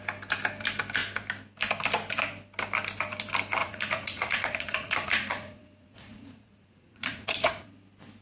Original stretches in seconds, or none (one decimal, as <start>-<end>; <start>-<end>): 0.0-3.6; 7.7-8.2